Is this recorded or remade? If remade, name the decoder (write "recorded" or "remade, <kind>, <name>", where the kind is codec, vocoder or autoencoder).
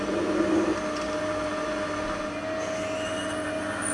recorded